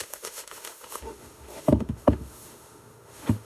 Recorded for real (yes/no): no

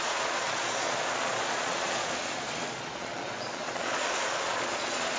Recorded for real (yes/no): no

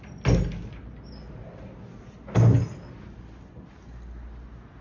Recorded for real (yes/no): yes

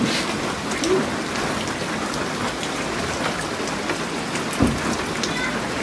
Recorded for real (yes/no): yes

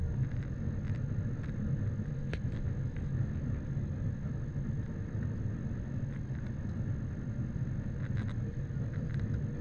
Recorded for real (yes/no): yes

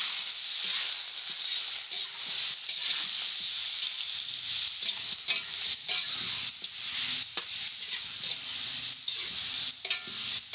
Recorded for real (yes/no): yes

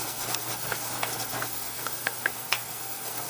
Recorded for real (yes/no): no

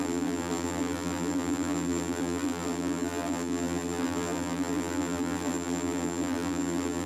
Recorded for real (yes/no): no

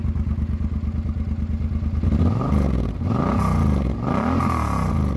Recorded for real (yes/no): yes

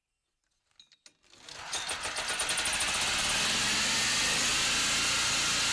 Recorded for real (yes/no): yes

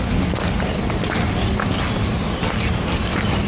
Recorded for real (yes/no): yes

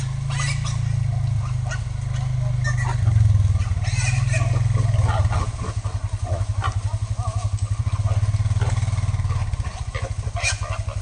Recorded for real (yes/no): yes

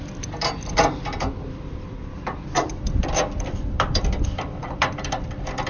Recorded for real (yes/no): no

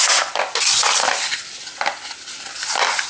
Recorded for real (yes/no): yes